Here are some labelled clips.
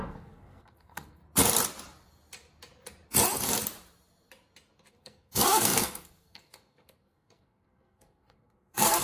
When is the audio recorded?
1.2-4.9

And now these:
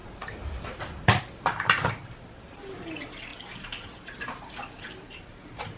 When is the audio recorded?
0.0-5.8

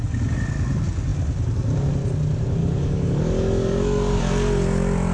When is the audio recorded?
0.0-2.6; 4.2-5.1

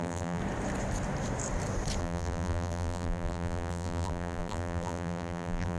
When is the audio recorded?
0.4-2.0

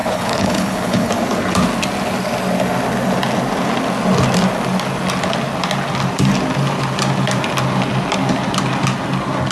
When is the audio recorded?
1.1-9.5

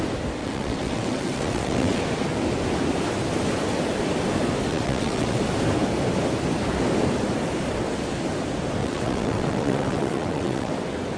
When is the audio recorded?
0.0-0.4; 2.0-4.7; 5.4-8.8; 10.7-11.2

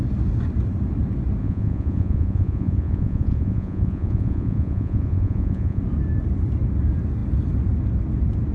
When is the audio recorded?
0.0-1.4; 5.8-8.5

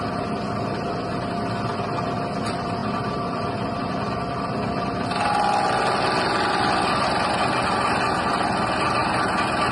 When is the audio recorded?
0.0-9.7